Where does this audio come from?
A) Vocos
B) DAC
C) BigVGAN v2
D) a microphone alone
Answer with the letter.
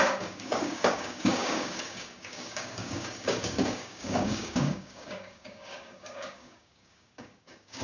B